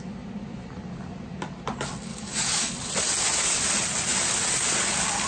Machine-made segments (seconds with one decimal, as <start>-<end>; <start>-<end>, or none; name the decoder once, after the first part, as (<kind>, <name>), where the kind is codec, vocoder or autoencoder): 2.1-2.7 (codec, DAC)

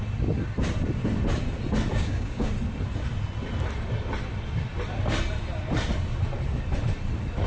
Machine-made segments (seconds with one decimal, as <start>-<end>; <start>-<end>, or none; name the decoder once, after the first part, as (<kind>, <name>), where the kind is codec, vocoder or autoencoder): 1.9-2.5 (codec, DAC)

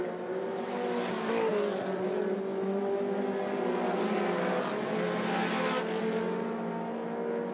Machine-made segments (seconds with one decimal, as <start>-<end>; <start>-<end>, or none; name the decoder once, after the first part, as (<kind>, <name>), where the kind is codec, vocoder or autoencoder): none

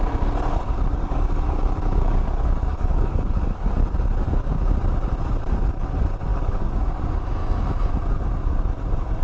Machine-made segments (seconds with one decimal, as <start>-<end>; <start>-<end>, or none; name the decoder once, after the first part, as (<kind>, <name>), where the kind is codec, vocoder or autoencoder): 1.0-3.7 (codec, DAC); 6.3-7.0